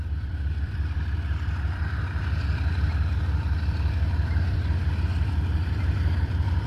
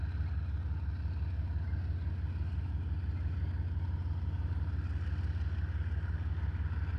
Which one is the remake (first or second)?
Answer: first